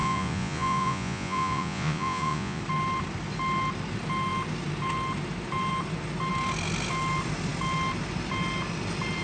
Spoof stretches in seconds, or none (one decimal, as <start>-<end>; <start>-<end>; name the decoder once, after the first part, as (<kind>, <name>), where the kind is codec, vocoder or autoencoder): 0.0-2.6 (vocoder, Vocos)